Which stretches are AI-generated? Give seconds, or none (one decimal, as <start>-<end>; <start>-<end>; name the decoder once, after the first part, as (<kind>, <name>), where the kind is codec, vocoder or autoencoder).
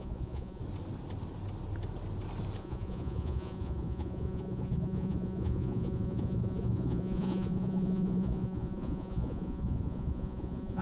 0.0-0.6 (vocoder, Vocos); 2.6-10.8